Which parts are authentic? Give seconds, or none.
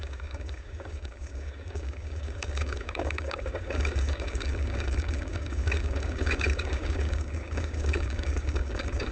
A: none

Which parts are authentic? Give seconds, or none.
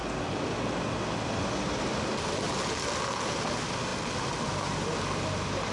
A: 0.0-5.7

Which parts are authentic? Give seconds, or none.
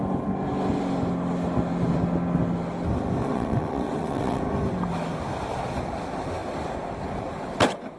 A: 0.0-3.2; 4.4-8.0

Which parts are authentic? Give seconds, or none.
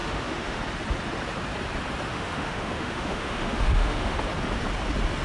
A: 0.6-2.1; 4.2-5.2